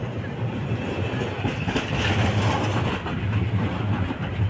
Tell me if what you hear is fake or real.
real